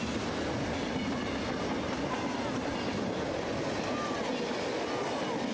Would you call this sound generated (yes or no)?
no